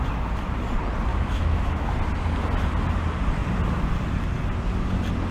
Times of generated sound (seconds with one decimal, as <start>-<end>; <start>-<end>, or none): 1.1-1.9